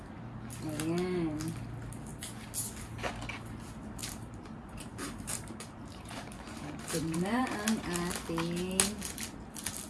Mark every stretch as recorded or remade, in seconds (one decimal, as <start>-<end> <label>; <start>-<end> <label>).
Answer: 0.0-4.0 recorded; 4.0-7.4 remade; 7.4-9.9 recorded